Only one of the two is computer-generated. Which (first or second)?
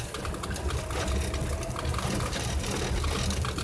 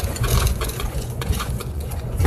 second